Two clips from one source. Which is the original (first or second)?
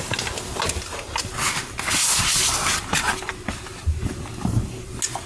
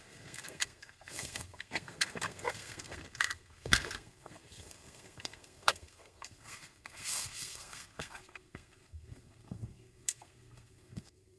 first